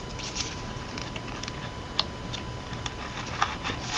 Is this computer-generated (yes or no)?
no